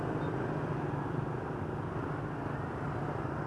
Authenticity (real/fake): real